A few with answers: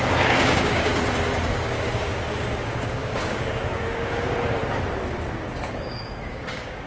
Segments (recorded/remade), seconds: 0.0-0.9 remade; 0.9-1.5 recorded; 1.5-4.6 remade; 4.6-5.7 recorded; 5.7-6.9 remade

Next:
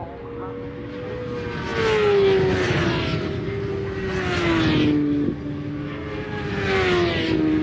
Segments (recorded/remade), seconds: 0.0-7.6 recorded

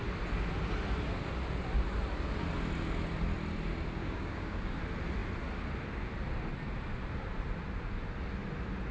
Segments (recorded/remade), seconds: 0.0-4.0 recorded; 4.0-4.8 remade; 4.8-8.9 recorded

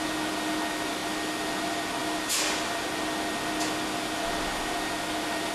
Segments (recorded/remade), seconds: 0.0-5.5 recorded